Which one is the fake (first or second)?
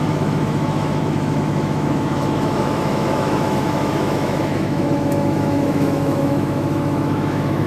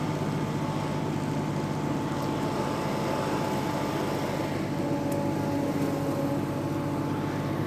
first